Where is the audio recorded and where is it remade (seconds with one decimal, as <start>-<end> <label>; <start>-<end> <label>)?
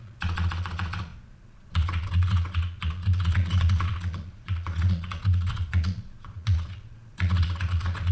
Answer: 0.0-8.1 remade